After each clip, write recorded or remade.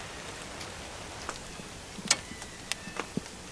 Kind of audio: recorded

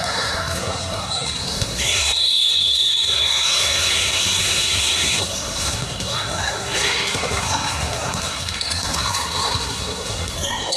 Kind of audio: remade